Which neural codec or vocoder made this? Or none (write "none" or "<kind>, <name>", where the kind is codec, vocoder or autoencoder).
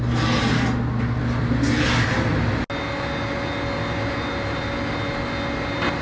none